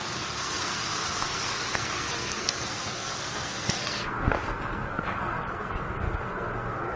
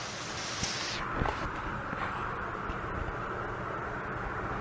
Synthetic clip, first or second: first